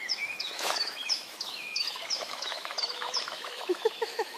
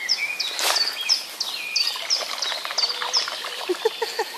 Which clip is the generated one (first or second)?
first